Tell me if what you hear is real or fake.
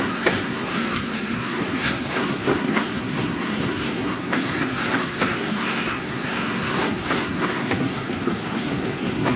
fake